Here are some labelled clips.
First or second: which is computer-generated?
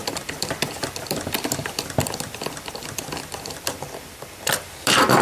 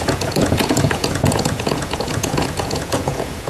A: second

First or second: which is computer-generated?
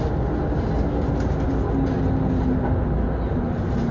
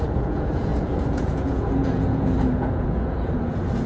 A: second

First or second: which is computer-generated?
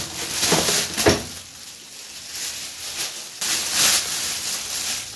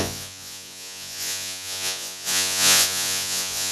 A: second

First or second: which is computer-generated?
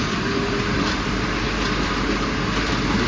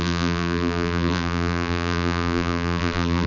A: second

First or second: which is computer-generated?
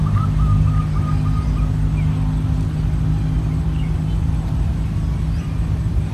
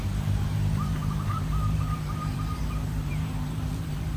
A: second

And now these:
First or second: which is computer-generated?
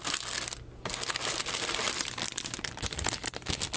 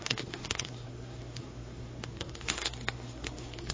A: second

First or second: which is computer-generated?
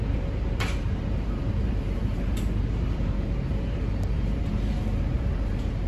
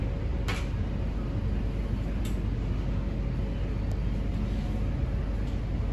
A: first